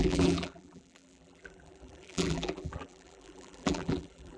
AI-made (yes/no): yes